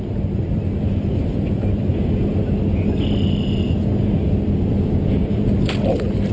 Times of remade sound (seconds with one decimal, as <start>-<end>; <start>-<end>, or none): 0.0-1.9; 5.1-6.3